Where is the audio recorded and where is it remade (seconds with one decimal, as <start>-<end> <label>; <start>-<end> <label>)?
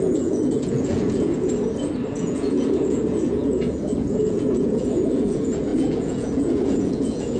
0.0-1.5 remade; 1.5-2.1 recorded; 2.1-7.4 remade